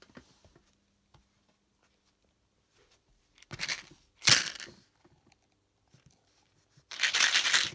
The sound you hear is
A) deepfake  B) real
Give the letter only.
B